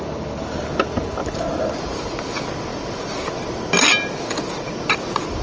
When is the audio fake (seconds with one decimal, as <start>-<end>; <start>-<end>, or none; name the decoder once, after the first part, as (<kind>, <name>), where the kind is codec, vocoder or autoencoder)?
none